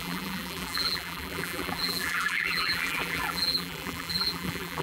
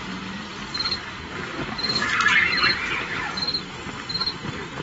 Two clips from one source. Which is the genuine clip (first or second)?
second